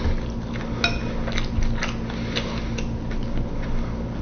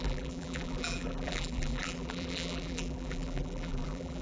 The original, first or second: first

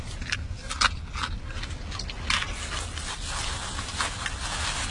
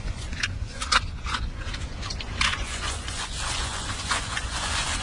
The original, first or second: first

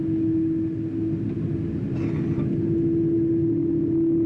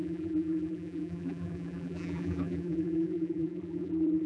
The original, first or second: first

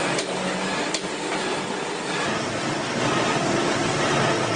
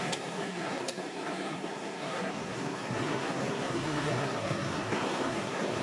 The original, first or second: first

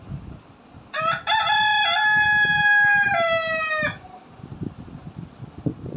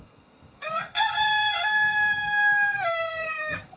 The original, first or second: first